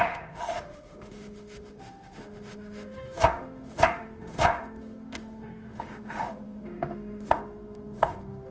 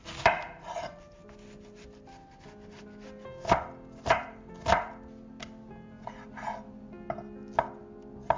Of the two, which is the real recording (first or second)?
second